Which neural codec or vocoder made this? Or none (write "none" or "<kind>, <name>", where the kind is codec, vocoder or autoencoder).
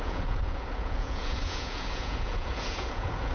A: vocoder, Vocos